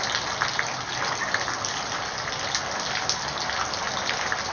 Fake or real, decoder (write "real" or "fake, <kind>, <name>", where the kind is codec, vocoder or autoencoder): real